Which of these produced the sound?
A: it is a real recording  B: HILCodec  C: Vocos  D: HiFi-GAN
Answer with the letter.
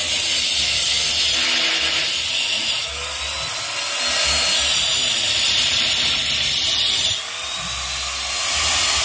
A